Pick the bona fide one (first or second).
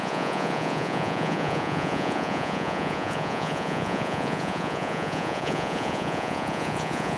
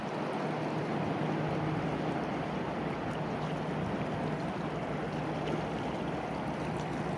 second